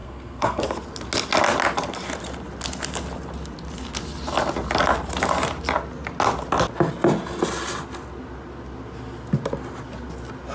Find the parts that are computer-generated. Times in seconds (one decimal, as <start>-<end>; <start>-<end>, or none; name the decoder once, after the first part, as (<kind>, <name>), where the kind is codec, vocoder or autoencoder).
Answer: 0.0-0.6 (codec, SNAC)